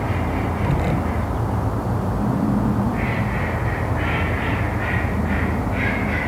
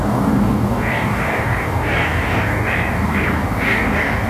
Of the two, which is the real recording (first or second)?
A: first